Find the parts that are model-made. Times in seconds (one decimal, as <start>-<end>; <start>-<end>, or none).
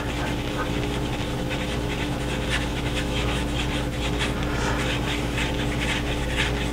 2.7-3.4